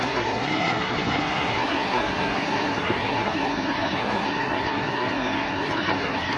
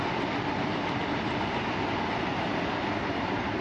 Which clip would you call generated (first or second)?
first